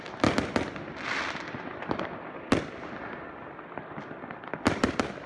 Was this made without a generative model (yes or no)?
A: no